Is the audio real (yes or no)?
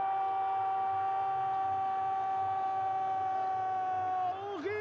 yes